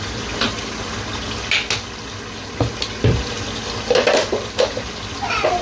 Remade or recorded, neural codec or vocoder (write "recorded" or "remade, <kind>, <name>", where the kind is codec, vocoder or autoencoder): recorded